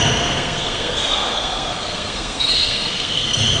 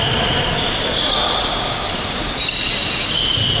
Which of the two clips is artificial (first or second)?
first